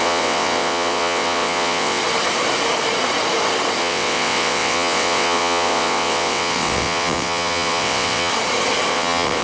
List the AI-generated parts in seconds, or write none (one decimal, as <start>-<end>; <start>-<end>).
0.0-2.0; 3.8-8.3; 8.9-9.4